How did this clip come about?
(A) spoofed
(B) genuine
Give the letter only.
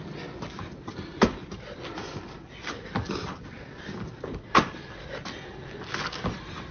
B